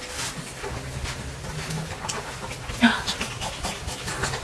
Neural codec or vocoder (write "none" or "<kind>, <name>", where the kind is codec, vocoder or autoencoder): none